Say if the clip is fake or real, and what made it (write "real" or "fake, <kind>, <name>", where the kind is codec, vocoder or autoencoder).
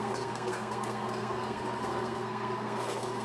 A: fake, codec, SNAC